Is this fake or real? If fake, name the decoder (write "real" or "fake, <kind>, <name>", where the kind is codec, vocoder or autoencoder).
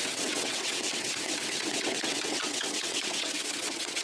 fake, vocoder, WaveNeXt